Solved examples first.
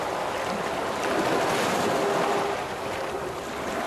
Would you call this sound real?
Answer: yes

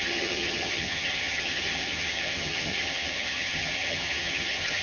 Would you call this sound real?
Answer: no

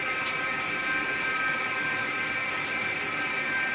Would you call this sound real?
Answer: yes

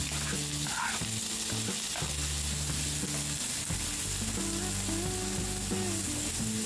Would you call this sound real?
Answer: yes